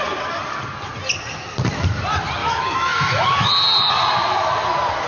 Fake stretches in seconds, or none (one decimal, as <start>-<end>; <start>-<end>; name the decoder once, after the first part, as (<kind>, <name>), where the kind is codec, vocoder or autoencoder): 2.4-3.5 (autoencoder, DAC-VAE)